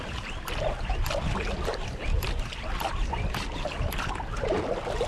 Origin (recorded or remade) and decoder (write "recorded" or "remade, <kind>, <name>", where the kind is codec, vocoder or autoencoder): recorded